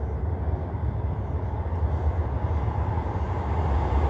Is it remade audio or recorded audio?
recorded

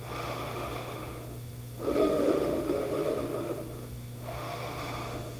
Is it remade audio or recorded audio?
remade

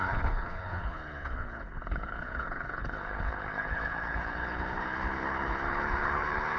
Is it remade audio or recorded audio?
remade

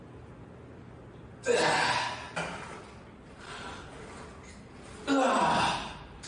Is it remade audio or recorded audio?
recorded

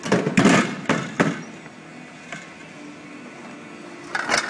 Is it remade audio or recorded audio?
recorded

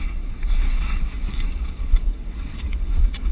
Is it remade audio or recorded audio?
remade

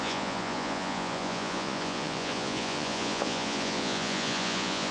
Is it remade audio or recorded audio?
remade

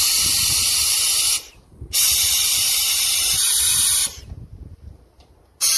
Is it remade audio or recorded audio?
remade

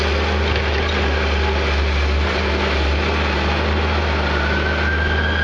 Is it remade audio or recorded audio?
recorded